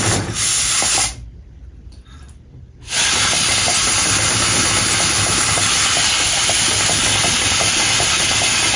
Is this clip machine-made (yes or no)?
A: no